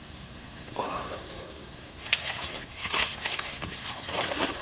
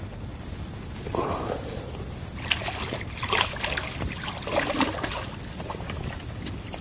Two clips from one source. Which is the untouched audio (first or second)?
second